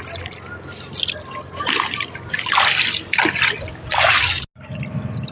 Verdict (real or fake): real